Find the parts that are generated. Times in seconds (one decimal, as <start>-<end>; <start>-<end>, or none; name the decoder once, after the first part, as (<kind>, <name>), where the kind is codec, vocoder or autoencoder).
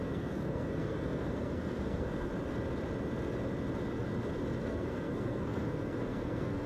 0.0-2.3 (codec, SNAC); 4.6-6.7